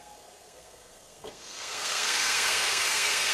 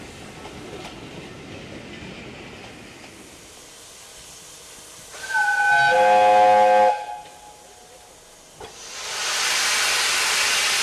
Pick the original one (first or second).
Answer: second